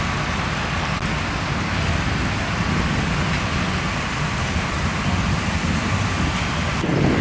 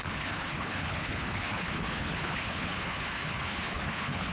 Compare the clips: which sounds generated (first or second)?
second